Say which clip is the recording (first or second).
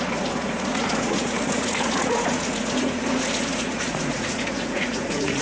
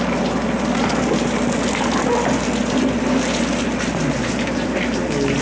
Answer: second